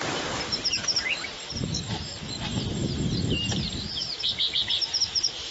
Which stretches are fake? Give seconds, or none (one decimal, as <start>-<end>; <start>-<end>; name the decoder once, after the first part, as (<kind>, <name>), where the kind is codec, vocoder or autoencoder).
0.0-5.5 (vocoder, BigVGAN v2)